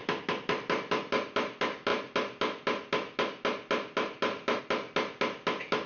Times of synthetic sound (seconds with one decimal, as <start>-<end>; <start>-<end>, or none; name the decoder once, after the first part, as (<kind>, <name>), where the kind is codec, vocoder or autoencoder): none